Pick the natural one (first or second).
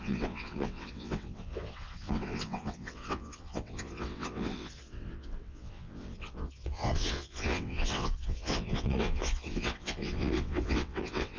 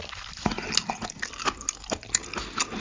second